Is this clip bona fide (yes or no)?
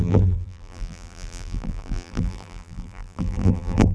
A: no